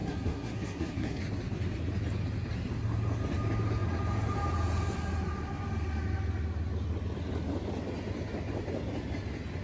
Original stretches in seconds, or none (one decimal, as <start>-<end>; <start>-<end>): 1.2-9.6